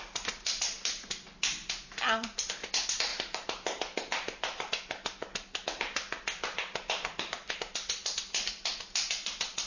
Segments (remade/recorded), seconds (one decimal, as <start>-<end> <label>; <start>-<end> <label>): 0.0-3.1 recorded; 3.1-7.5 remade; 7.5-9.7 recorded